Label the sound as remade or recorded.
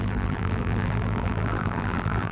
remade